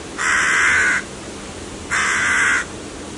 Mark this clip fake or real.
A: real